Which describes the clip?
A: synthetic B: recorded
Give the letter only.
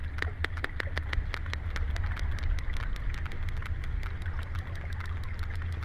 B